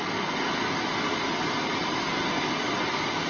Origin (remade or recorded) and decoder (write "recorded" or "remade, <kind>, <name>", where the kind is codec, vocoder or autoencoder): recorded